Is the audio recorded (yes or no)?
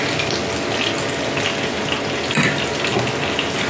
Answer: yes